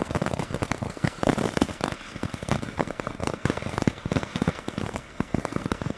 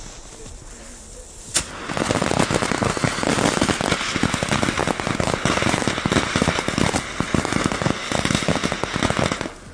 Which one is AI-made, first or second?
first